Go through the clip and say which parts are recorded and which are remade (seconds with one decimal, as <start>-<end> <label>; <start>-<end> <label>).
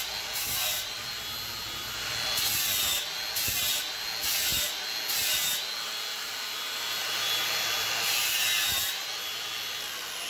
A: 0.0-10.3 recorded